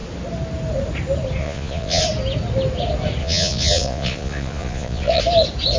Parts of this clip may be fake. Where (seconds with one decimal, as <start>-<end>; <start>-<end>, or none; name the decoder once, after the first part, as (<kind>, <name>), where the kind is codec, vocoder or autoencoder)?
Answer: 1.4-2.0 (vocoder, Vocos); 3.2-5.2